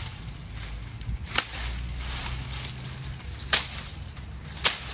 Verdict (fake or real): real